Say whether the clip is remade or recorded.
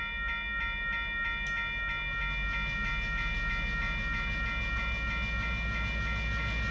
recorded